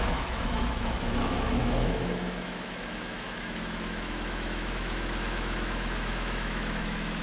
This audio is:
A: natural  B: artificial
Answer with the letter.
B